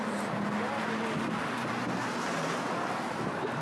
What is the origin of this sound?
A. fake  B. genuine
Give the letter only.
B